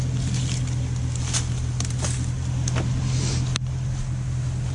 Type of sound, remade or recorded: recorded